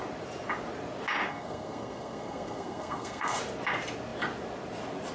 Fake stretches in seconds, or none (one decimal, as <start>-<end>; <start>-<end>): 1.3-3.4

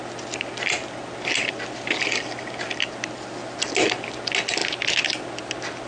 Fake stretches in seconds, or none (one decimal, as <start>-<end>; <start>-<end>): none

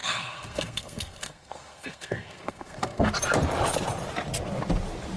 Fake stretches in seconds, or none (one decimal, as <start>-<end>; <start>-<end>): 0.0-3.1

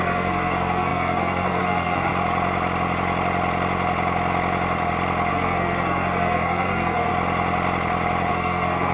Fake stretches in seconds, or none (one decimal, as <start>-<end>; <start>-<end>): 0.0-2.1; 5.3-7.1; 8.3-8.9

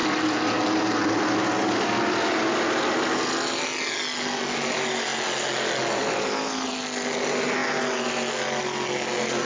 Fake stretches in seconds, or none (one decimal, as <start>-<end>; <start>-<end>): none

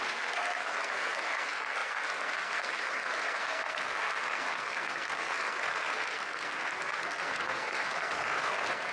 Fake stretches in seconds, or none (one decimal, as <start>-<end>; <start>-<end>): 0.0-8.9